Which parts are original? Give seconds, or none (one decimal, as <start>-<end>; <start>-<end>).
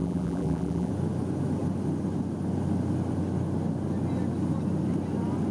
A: 0.9-5.5